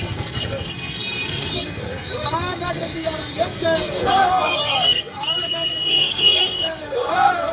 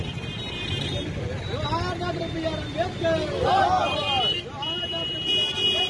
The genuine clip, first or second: second